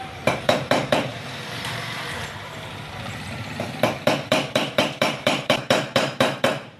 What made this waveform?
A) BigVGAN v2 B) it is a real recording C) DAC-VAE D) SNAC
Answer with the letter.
A